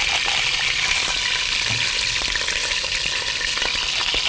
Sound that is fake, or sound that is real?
real